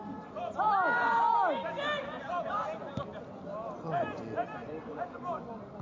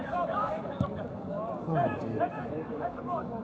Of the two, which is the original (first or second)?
first